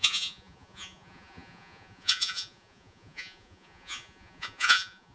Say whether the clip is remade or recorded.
remade